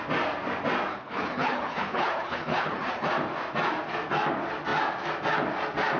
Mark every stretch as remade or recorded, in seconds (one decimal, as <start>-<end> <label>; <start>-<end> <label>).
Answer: 0.0-0.9 recorded; 0.9-3.1 remade; 3.1-6.0 recorded